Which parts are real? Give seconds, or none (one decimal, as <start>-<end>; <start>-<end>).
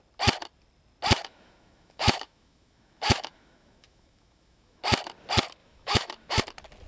0.0-1.2; 4.8-5.6; 6.4-6.9